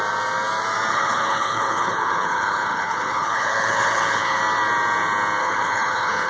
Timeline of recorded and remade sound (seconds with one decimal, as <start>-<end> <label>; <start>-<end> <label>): 0.0-0.9 recorded; 0.9-4.4 remade; 4.4-5.4 recorded; 5.4-6.3 remade